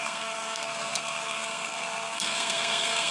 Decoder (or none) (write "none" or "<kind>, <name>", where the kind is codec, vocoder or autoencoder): codec, SNAC